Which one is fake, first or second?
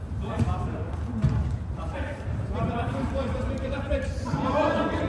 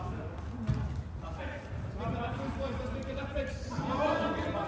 first